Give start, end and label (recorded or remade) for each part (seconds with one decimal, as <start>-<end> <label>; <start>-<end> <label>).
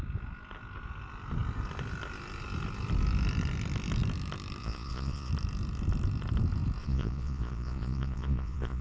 0.0-4.6 recorded; 4.6-5.3 remade; 5.3-6.8 recorded; 6.8-8.8 remade